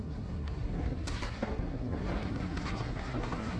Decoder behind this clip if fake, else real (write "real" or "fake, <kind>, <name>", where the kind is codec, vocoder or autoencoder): fake, codec, SNAC